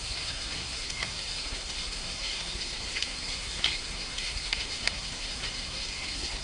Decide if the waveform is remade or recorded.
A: remade